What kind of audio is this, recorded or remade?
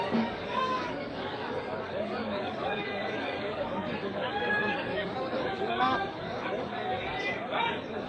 remade